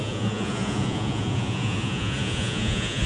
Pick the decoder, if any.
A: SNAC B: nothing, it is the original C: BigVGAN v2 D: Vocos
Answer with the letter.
D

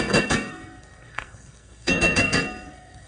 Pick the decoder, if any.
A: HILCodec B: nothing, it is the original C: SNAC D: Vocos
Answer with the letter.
C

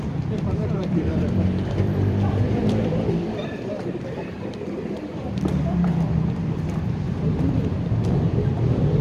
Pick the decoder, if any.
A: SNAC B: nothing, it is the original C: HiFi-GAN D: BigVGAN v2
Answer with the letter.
D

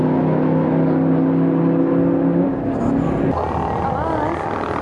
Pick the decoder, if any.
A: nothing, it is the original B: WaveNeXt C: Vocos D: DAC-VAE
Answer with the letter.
A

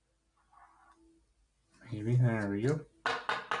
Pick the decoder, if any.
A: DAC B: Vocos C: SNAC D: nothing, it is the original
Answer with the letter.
D